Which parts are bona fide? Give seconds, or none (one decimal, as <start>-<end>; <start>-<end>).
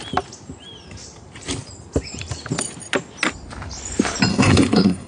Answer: 0.0-4.3